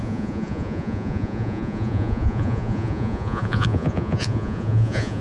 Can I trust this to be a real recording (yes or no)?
no